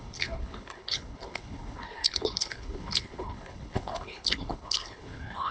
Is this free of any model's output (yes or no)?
no